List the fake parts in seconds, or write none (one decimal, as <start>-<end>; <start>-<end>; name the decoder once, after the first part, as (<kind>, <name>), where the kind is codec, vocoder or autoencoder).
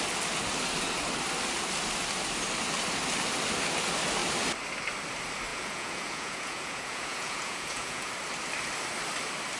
5.5-8.1 (vocoder, Vocos)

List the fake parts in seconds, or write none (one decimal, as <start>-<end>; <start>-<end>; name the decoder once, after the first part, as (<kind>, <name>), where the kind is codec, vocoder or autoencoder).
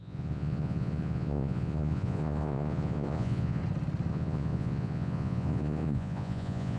0.0-3.6 (vocoder, Vocos); 4.1-6.8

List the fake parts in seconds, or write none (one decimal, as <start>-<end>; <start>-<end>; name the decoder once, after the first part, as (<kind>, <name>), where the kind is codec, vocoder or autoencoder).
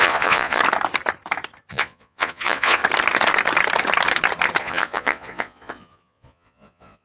0.0-0.6 (vocoder, Vocos); 1.7-2.8; 4.6-7.0